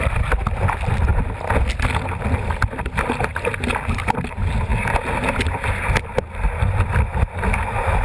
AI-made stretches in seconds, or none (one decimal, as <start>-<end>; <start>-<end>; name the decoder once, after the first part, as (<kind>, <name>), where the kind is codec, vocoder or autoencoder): none